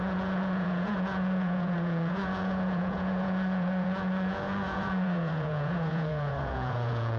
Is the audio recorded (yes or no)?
no